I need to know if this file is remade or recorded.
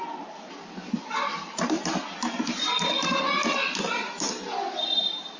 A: recorded